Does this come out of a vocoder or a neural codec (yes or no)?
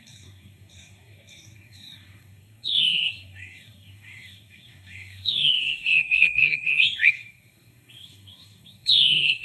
yes